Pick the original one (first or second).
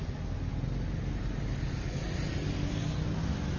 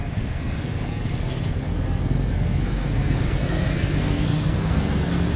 first